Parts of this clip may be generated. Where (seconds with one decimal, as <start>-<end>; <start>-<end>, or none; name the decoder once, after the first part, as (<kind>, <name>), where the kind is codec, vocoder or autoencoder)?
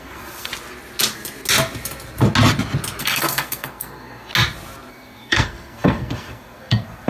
0.0-0.5 (codec, SNAC); 3.0-4.3; 4.9-7.1